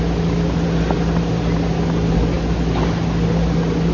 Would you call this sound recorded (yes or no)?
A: yes